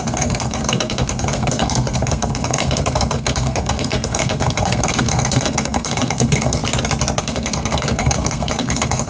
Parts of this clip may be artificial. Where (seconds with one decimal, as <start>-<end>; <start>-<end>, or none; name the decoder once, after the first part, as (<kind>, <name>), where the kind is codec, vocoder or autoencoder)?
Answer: 0.0-6.6 (codec, SNAC); 7.2-9.1